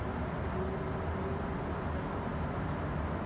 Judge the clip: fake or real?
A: real